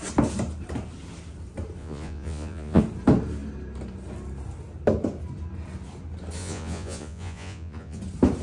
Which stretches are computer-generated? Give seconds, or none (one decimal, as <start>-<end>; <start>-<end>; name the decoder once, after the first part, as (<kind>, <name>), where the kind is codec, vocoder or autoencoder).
1.8-2.8 (vocoder, Vocos); 6.4-8.0